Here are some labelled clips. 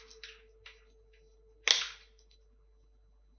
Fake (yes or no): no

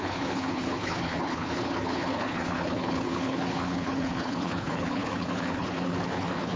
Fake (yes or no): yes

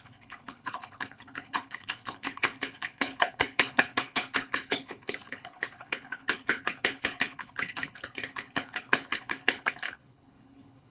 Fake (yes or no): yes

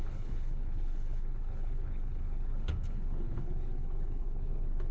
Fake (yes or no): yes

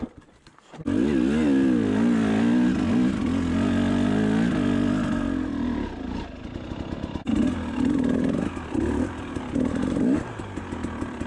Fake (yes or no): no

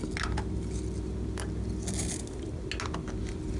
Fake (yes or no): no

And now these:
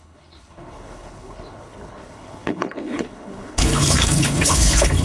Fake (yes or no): yes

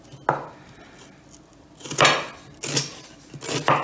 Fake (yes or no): no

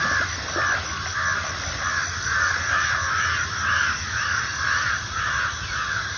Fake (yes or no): no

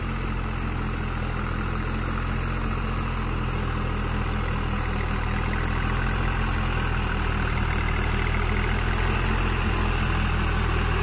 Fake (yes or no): no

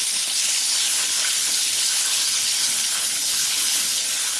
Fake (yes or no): yes